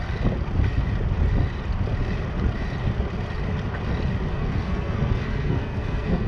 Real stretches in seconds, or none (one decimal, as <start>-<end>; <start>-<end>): 0.0-4.3